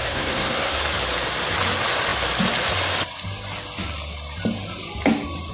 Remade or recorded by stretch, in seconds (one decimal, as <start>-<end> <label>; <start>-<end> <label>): 0.0-0.8 remade; 0.8-5.5 recorded